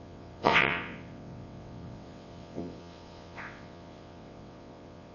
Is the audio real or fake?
fake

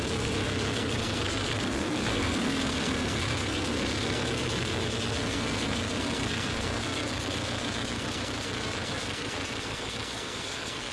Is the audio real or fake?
fake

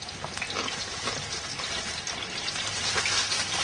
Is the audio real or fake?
real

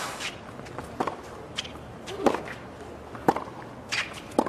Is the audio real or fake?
real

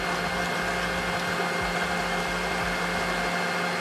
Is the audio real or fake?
real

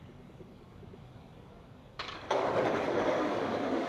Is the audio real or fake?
fake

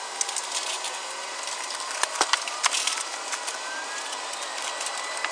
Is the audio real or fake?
real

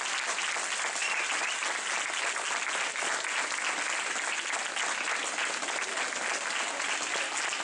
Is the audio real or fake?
real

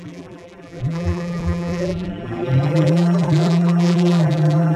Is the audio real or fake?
fake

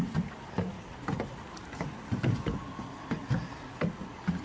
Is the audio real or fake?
real